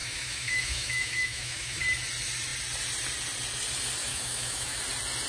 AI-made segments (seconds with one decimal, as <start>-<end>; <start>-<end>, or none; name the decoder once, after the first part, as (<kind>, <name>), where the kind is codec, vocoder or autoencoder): 0.0-1.8 (autoencoder, DAC-VAE); 4.0-4.8